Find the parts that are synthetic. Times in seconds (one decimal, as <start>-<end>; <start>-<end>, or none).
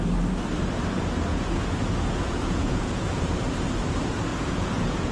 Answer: 1.3-3.3; 4.3-5.1